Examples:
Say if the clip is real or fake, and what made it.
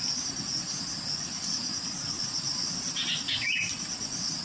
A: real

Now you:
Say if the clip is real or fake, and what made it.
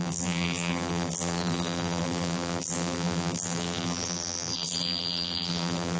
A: fake, vocoder, BigVGAN v2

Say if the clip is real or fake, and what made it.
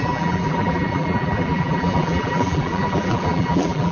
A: fake, vocoder, BigVGAN v2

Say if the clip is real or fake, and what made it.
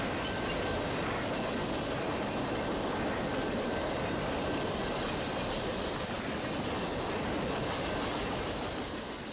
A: real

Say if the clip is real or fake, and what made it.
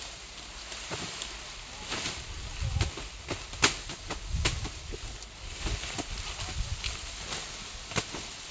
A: real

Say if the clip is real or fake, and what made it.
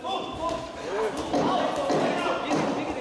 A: real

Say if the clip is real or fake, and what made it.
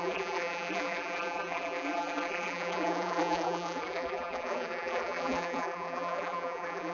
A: fake, vocoder, BigVGAN v2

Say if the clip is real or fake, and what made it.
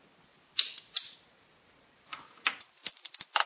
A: real